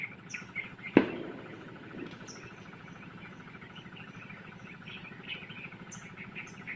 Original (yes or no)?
no